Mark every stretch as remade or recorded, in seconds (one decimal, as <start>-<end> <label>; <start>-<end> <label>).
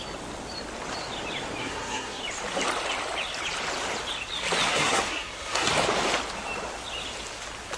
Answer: 0.0-1.6 recorded; 1.6-2.2 remade; 2.2-4.7 recorded; 4.7-5.7 remade; 5.7-7.8 recorded